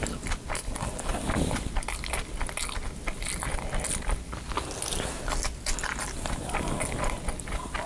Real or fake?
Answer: real